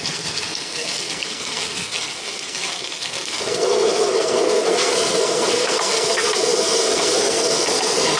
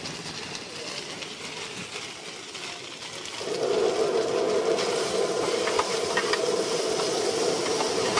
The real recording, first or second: second